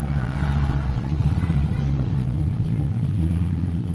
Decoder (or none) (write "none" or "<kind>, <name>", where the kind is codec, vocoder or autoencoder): vocoder, Vocos